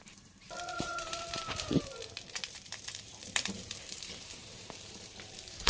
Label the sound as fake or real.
fake